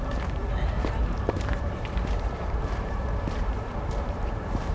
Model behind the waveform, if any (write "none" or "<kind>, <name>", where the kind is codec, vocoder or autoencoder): vocoder, BigVGAN v2